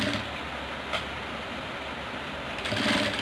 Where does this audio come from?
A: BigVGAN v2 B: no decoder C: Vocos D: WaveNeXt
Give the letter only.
A